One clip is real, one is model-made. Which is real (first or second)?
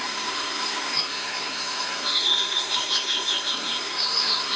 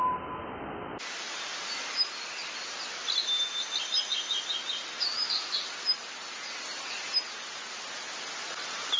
second